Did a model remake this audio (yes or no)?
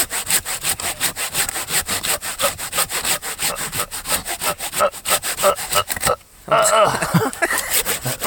no